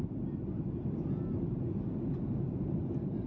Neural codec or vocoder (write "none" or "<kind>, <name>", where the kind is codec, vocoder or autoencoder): none